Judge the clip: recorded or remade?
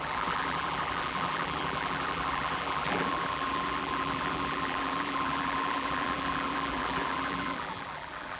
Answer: remade